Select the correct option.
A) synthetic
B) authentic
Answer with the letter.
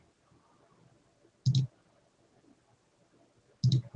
B